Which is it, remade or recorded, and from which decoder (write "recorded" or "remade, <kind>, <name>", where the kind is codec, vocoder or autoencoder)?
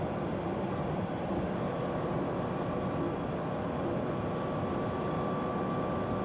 recorded